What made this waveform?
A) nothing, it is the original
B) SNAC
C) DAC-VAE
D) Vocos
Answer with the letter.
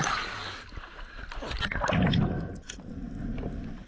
A